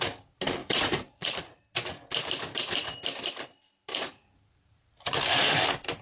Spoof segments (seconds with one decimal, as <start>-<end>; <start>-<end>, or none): 0.6-1.6; 3.9-4.7